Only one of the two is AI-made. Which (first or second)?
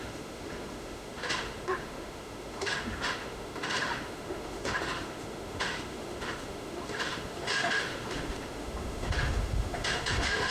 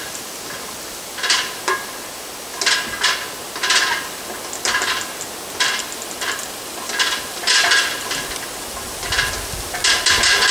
first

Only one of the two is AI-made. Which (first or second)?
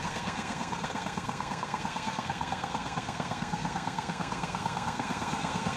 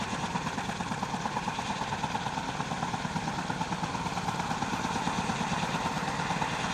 first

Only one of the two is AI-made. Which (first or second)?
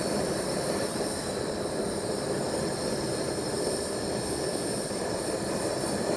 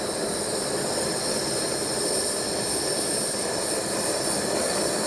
first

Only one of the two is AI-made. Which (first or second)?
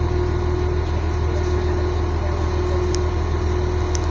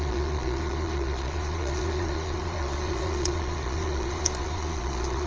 second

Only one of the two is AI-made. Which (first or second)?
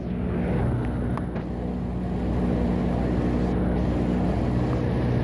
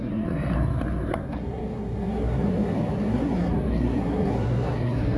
second